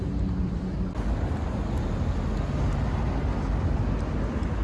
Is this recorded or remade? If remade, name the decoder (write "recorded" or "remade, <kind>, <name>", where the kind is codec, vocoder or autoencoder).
recorded